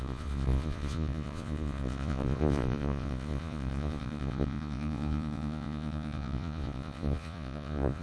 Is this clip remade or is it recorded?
remade